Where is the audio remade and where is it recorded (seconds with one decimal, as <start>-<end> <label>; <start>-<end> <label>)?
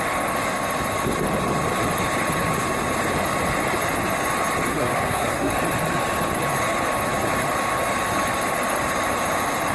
0.0-4.7 recorded; 4.7-5.5 remade; 5.5-9.7 recorded